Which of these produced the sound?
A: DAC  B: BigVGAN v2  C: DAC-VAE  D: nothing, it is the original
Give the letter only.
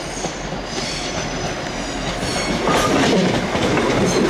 D